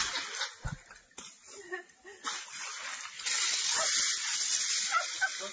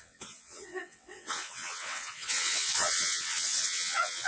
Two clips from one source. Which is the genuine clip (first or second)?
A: first